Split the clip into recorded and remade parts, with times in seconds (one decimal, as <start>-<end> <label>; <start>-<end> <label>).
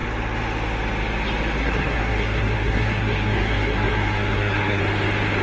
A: 0.0-1.6 recorded; 1.6-4.8 remade; 4.8-5.4 recorded